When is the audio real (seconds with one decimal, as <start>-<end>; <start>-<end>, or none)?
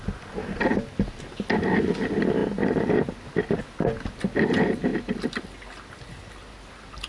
0.0-7.1